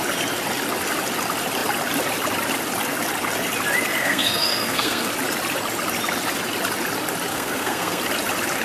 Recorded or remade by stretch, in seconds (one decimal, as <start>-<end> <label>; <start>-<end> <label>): 0.0-4.0 recorded; 4.0-5.1 remade; 5.1-7.3 recorded; 7.3-8.0 remade; 8.0-8.6 recorded